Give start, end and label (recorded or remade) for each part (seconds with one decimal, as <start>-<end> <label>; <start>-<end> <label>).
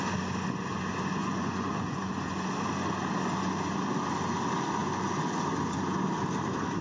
0.0-1.2 recorded; 1.2-2.1 remade; 2.1-6.8 recorded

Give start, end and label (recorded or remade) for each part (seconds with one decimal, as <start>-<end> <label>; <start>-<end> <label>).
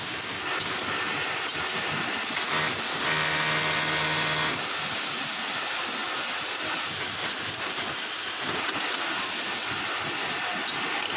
0.0-11.2 recorded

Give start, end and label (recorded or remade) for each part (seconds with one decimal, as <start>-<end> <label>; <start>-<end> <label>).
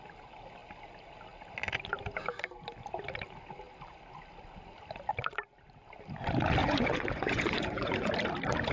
0.0-6.6 recorded; 6.6-8.1 remade; 8.1-8.7 recorded